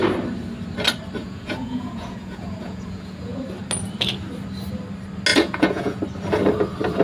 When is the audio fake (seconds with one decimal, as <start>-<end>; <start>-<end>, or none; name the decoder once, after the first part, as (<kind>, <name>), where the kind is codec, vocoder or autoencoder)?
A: 1.2-3.3 (vocoder, Vocos); 5.3-6.0